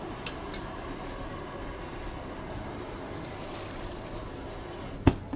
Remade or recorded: recorded